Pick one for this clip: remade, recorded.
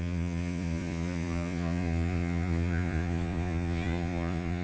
remade